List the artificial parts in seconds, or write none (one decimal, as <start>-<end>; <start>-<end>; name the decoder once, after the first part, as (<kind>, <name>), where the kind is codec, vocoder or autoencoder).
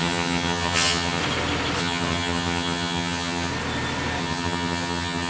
0.0-1.2 (vocoder, HiFi-GAN); 1.8-3.5; 4.2-5.3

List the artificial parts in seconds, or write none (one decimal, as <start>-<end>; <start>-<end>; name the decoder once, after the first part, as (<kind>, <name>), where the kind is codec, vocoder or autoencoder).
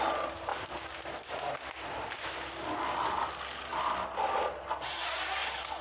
none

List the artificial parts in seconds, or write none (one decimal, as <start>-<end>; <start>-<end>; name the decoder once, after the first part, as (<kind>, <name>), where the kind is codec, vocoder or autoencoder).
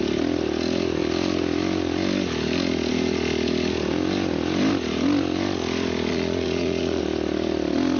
6.1-7.0 (vocoder, Vocos)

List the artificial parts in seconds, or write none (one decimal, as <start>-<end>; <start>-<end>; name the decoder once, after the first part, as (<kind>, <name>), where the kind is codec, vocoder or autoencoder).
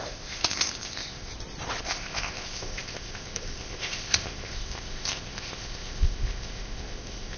0.0-1.3 (codec, ZipCodec); 1.8-7.4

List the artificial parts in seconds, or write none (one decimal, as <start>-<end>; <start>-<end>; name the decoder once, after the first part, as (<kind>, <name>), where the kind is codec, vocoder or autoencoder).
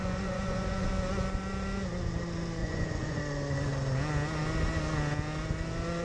0.0-0.9 (vocoder, Vocos); 2.6-3.2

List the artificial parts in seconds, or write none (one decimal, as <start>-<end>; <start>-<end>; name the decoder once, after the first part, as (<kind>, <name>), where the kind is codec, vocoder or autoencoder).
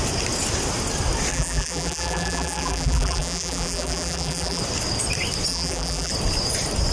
1.3-4.6 (vocoder, BigVGAN v2); 5.5-6.1